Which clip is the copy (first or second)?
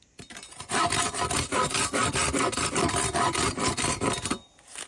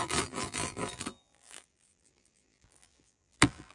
second